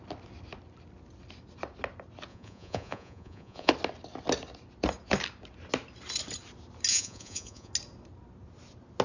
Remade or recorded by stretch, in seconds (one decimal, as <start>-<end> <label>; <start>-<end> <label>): 0.0-2.3 recorded; 2.3-3.7 remade; 3.7-6.9 recorded; 6.9-7.7 remade; 7.7-9.0 recorded